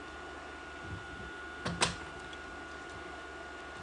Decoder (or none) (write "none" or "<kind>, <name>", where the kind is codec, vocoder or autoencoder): none